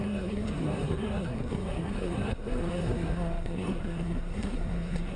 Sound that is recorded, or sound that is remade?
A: remade